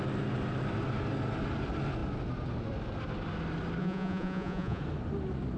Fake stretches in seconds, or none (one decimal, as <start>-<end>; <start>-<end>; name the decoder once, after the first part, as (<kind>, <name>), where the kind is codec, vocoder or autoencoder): 3.8-4.8 (vocoder, Vocos)